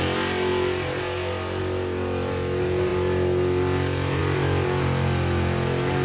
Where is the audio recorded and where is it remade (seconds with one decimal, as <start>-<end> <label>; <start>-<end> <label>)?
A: 0.0-6.0 recorded